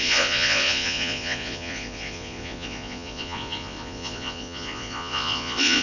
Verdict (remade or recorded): remade